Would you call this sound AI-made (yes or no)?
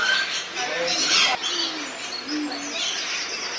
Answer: no